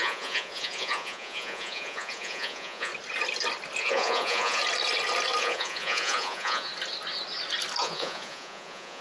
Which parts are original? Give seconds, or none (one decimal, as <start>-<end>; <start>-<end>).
2.9-3.8; 4.6-5.4; 6.7-7.8